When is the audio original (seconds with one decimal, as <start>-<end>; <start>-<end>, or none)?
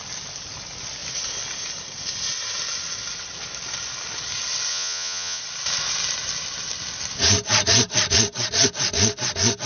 0.0-4.7; 5.4-9.7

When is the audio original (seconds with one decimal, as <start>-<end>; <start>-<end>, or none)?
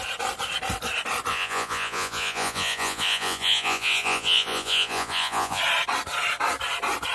0.0-1.3; 5.6-7.1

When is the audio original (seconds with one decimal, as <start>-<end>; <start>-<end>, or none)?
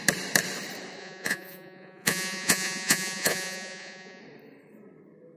0.0-1.0; 4.2-5.4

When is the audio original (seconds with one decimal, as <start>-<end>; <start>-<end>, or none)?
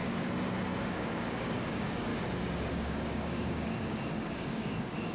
0.0-0.8; 2.1-2.7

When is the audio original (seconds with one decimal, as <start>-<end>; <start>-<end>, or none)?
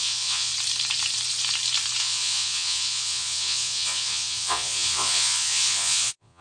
0.5-2.0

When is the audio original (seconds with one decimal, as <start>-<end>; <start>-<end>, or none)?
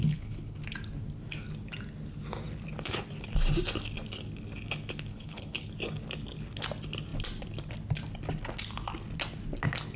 0.6-5.1; 5.7-10.0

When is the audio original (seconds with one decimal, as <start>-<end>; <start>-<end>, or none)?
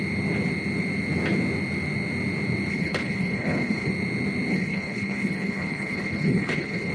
0.0-2.7; 3.9-4.5